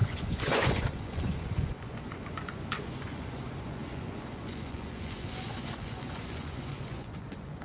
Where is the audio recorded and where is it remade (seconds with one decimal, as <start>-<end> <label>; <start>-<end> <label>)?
0.0-7.6 remade

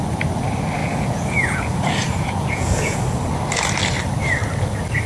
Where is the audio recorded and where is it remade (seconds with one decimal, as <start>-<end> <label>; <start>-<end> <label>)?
0.0-0.8 recorded; 0.8-3.0 remade; 3.0-5.1 recorded

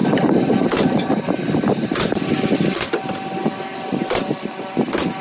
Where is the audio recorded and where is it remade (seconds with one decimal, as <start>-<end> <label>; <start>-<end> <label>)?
0.0-5.2 recorded

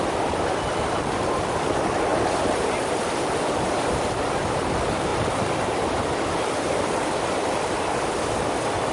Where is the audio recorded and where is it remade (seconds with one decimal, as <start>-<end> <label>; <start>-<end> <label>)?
0.0-8.9 recorded